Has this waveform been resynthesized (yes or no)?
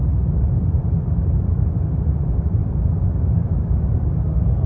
yes